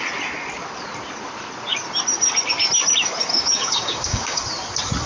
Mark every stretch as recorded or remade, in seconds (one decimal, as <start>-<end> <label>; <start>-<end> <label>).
0.0-3.3 recorded; 3.3-4.4 remade; 4.4-5.1 recorded